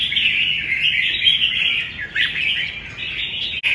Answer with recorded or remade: recorded